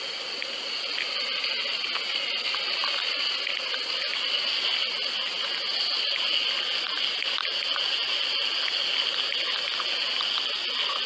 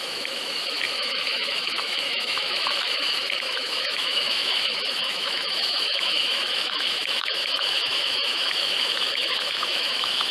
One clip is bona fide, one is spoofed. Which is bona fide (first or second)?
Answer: first